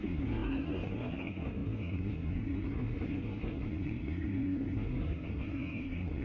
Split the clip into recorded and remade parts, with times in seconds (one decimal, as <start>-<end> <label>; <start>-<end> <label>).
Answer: 0.0-6.2 remade